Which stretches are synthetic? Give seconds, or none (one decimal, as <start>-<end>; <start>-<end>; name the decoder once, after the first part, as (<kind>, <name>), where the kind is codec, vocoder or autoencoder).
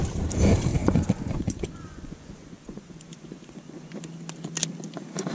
0.7-3.9 (vocoder, Vocos)